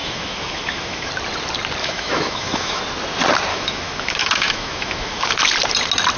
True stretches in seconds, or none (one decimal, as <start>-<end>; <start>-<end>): 1.1-1.8; 2.8-3.5; 5.3-6.2